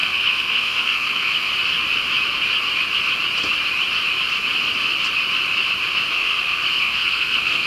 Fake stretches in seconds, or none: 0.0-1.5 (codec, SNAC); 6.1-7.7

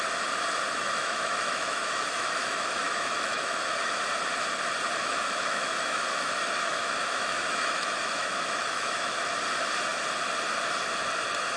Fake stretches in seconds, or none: 0.8-4.0 (autoencoder, DAC-VAE); 5.0-9.2